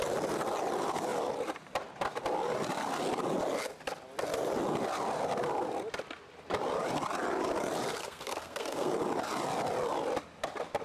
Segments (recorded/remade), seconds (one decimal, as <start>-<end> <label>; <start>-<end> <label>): 0.0-8.0 recorded; 8.0-8.9 remade; 8.9-10.8 recorded